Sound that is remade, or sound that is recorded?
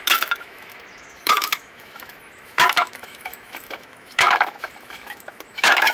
remade